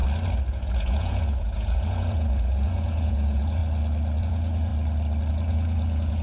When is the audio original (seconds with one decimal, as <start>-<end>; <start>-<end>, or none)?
0.0-0.5; 3.6-4.2; 4.7-5.3